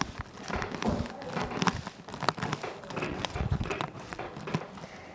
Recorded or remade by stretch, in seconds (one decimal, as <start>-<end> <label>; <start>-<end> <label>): 0.0-3.1 recorded; 3.1-4.3 remade; 4.3-5.1 recorded